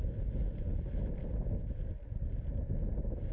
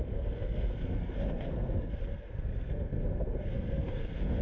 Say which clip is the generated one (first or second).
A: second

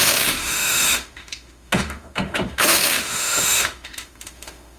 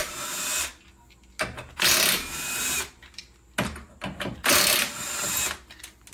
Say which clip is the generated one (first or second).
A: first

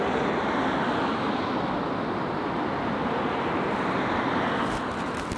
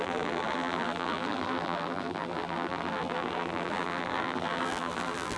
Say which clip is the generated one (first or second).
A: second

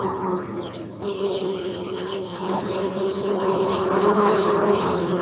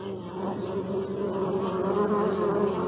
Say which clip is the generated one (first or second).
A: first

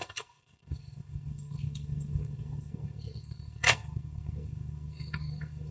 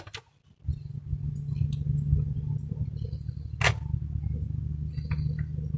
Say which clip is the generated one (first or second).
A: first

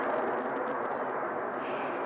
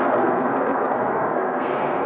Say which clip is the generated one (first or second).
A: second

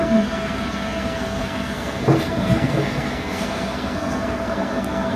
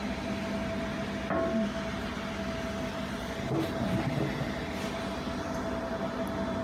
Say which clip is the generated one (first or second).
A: first